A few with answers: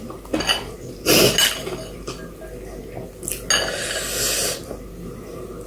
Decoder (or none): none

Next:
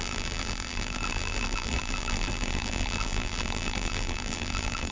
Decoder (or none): vocoder, BigVGAN v2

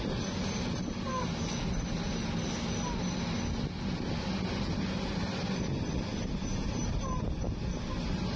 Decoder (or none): none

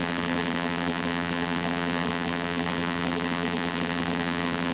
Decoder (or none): vocoder, BigVGAN v2